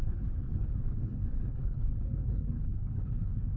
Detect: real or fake fake